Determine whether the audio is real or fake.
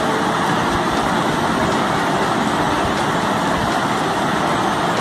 real